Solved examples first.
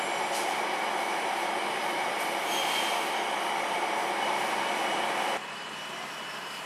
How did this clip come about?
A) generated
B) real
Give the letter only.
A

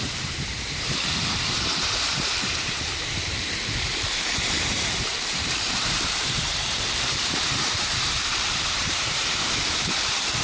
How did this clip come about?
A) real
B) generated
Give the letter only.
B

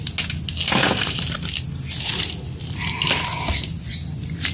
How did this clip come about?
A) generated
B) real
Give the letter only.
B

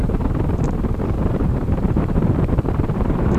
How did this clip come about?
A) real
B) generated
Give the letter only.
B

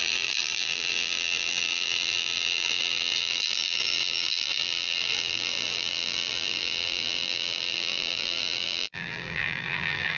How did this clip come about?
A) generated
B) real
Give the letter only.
A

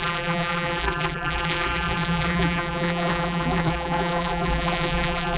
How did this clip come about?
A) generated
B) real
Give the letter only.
A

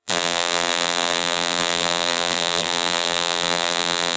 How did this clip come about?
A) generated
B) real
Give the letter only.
A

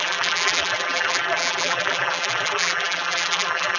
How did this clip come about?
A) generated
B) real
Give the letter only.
A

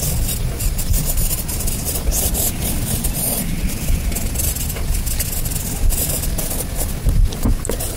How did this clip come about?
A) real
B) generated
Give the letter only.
A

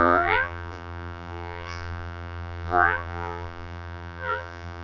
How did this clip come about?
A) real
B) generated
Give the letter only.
B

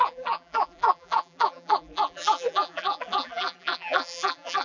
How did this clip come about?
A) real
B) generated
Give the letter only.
B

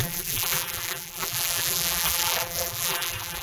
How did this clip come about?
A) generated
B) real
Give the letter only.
A